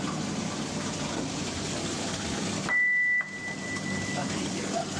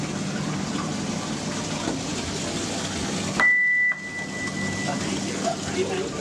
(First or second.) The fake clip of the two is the first